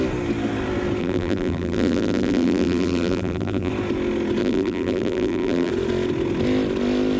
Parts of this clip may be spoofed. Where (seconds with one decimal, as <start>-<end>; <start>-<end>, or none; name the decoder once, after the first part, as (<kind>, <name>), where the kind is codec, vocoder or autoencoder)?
1.0-3.7 (vocoder, BigVGAN v2); 4.4-5.7